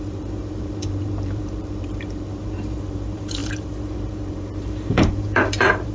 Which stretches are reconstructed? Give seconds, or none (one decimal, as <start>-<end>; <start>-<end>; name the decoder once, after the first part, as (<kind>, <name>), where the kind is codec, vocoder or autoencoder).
0.0-5.9 (vocoder, BigVGAN v2)